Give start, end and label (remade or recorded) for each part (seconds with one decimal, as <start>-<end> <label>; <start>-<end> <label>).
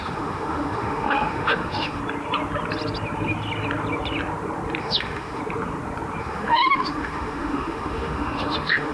0.0-2.0 remade; 2.0-4.8 recorded; 4.8-5.4 remade; 5.4-6.2 recorded; 6.2-8.9 remade